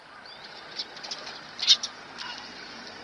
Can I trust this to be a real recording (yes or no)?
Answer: yes